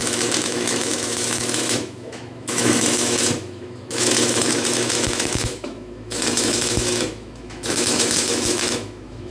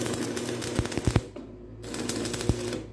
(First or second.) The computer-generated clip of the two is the first